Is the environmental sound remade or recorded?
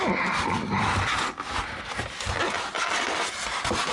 recorded